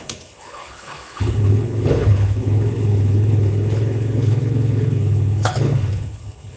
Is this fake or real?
fake